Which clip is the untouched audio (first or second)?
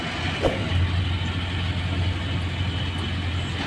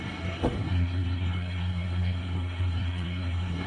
first